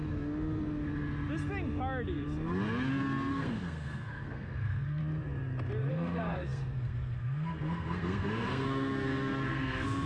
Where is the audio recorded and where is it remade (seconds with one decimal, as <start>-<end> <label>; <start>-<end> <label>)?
0.0-3.3 recorded; 3.3-5.0 remade; 5.0-5.9 recorded; 5.9-10.1 remade